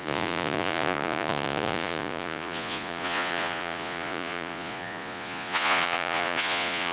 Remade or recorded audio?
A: remade